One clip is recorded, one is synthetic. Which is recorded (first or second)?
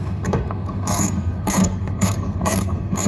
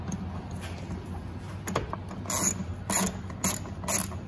second